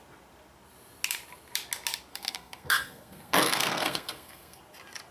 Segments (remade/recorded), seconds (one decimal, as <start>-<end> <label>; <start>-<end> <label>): 0.0-2.1 recorded; 2.1-4.6 remade; 4.6-5.1 recorded